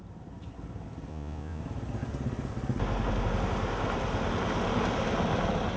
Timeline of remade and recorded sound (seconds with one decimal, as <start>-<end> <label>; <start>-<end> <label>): 0.0-1.1 recorded; 1.1-1.6 remade; 1.6-5.8 recorded